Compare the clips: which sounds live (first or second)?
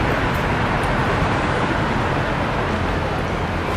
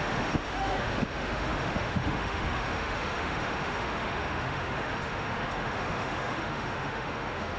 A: first